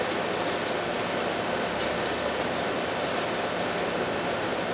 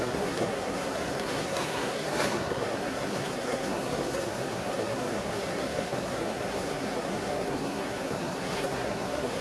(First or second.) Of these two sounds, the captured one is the first